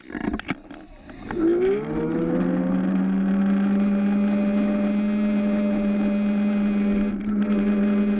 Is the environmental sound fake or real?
real